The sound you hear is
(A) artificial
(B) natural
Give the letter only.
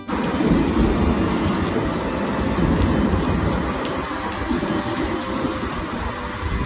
B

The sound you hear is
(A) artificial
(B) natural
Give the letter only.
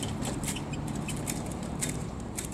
A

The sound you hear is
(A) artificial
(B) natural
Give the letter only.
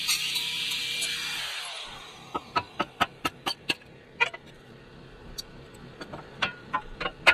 A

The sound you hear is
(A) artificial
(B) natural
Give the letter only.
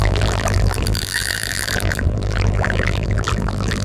A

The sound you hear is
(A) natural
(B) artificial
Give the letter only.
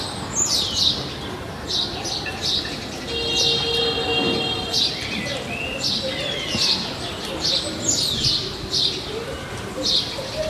A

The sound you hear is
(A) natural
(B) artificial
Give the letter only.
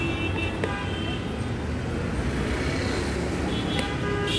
A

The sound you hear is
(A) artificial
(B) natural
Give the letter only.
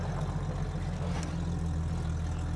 B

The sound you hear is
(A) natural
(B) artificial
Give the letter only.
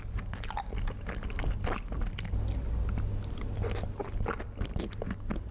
A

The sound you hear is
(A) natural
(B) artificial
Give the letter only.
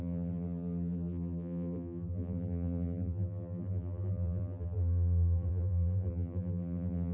B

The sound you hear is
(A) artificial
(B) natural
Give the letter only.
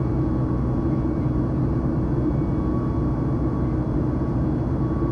B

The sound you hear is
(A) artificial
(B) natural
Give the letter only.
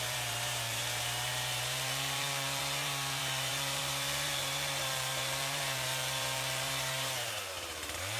A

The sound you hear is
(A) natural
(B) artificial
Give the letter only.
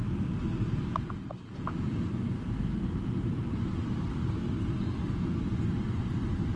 A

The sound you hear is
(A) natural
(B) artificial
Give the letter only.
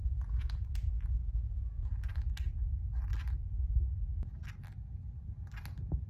A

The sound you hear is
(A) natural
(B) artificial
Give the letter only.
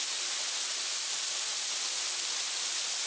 A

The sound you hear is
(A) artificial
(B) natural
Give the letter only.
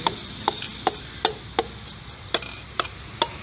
B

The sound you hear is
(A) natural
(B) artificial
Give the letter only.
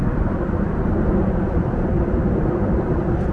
B